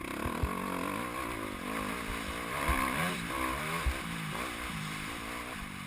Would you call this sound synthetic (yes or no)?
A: no